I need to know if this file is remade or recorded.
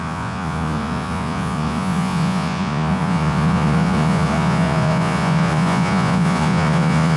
remade